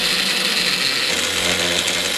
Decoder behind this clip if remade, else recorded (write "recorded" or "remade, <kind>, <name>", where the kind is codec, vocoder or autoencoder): recorded